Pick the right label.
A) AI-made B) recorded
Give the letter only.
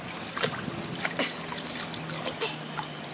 B